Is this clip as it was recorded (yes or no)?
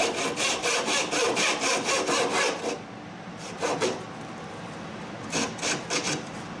yes